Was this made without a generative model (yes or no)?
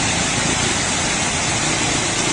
yes